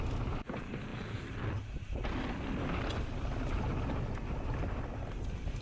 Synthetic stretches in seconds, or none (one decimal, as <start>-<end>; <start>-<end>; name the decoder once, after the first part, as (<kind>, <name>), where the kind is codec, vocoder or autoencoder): none